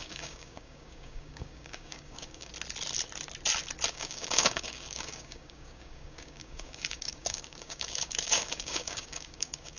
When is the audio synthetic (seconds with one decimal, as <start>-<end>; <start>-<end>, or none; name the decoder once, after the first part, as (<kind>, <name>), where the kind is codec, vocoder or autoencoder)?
0.0-2.5 (codec, DAC); 3.9-9.8